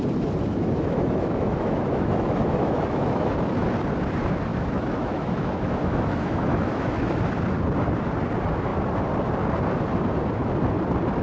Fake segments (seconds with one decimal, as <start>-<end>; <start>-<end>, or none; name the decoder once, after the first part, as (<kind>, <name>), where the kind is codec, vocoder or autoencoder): 0.5-3.3 (autoencoder, DAC-VAE); 4.5-7.2